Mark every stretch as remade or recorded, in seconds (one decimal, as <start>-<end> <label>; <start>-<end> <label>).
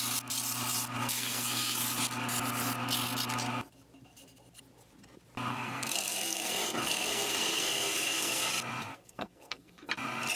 0.0-1.0 recorded; 1.0-1.8 remade; 1.8-5.5 recorded; 5.5-8.5 remade; 8.5-8.9 recorded; 8.9-9.9 remade; 9.9-10.4 recorded